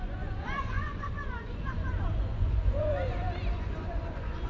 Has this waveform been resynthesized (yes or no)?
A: yes